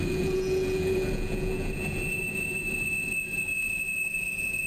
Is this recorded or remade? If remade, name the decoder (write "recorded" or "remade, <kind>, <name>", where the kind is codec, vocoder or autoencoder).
remade, vocoder, Vocos